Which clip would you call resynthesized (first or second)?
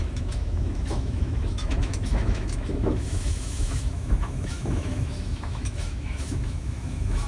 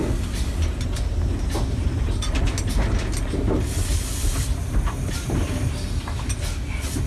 first